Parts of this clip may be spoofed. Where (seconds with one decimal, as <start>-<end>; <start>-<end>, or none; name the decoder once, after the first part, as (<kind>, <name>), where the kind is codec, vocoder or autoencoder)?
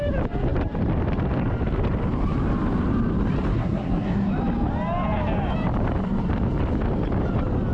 3.5-4.3 (codec, SNAC)